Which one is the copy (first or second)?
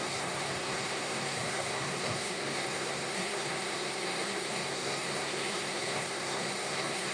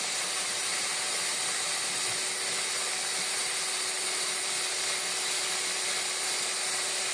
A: first